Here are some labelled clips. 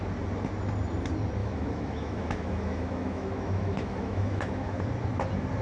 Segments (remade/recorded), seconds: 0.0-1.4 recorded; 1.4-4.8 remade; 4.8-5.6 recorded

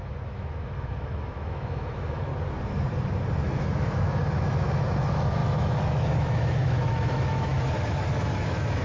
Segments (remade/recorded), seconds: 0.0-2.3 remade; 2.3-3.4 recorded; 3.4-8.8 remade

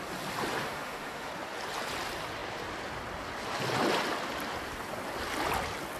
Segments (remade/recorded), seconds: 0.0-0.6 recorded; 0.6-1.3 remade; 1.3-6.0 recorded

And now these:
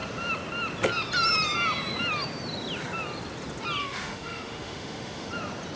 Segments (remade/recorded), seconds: 0.0-3.8 recorded; 3.8-5.3 remade; 5.3-5.8 recorded